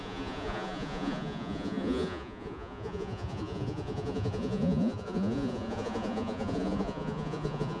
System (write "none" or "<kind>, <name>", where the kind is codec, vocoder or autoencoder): vocoder, Vocos